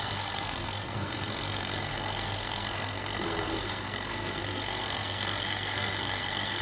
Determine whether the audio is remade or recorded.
remade